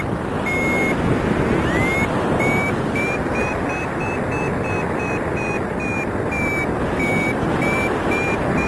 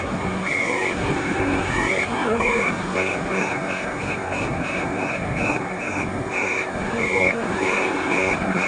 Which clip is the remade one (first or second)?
second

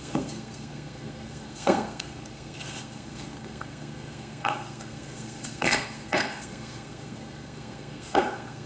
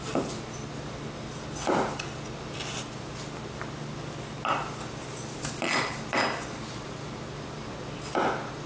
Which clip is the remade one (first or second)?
first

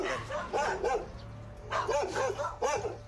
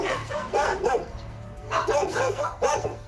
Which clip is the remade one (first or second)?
second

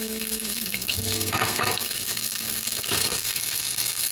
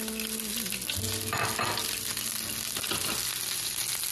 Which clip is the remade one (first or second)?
first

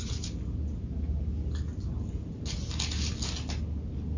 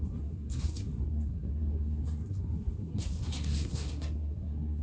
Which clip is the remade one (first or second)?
second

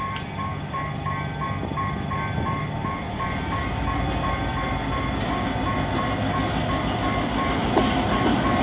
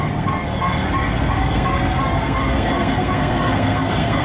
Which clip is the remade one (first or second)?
second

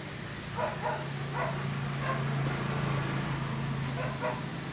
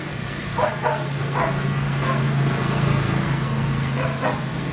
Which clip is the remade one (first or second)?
second